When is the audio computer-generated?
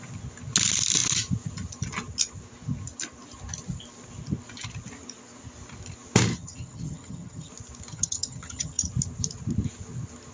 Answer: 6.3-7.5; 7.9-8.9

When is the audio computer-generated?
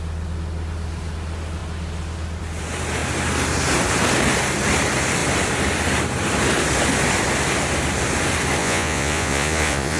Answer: 8.6-10.0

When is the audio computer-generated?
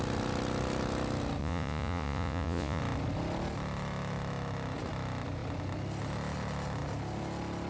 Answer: 1.4-2.8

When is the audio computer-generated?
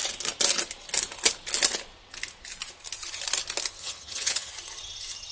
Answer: 3.8-4.5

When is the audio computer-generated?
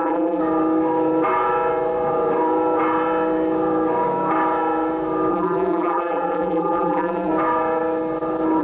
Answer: 0.0-0.4; 5.3-7.3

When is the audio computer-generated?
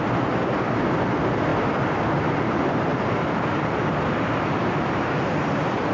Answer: none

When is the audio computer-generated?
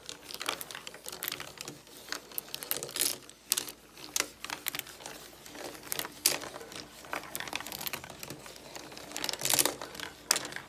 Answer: none